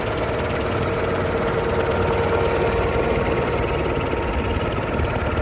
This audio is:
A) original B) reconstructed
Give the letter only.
A